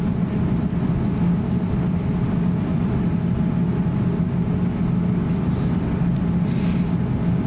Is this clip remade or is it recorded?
recorded